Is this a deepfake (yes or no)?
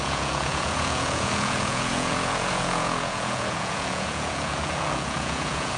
yes